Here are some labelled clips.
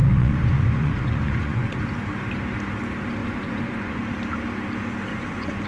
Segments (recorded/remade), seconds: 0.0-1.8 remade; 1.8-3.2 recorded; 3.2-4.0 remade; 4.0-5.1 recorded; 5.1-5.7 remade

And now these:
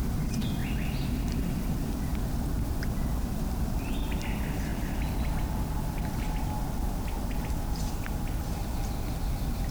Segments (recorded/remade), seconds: 0.0-9.7 recorded

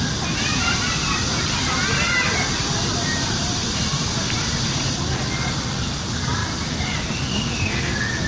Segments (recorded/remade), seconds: 0.0-2.5 recorded; 2.5-4.8 remade; 4.8-8.3 recorded

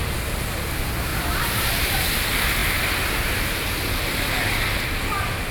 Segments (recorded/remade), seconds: 0.0-1.1 recorded; 1.1-2.0 remade; 2.0-5.5 recorded

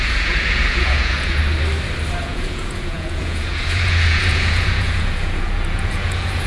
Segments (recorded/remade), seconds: 0.0-1.4 remade; 1.4-2.2 recorded; 2.2-6.5 remade

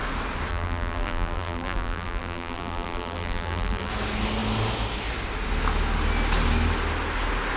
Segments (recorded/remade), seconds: 0.0-0.5 recorded; 0.5-3.9 remade; 3.9-7.6 recorded

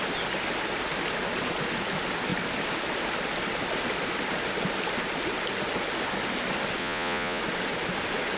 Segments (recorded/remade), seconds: 0.0-6.8 recorded; 6.8-7.4 remade; 7.4-8.4 recorded